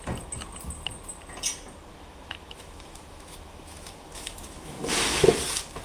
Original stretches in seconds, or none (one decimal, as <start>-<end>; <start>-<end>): 0.0-1.9; 4.8-5.8